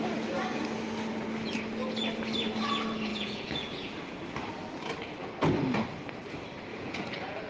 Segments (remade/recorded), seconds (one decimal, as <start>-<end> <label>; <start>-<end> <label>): 0.0-3.1 recorded; 3.1-3.9 remade; 3.9-6.7 recorded; 6.7-7.5 remade